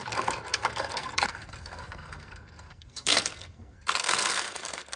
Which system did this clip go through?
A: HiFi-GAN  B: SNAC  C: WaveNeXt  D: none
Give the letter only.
B